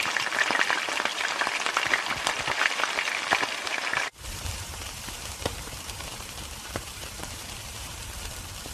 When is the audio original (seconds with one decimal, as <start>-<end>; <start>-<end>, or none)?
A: 0.0-3.9; 8.0-8.7